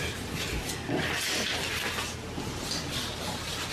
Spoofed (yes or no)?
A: no